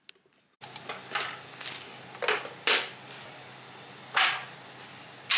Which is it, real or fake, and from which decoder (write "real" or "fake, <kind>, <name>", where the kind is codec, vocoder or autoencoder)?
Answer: real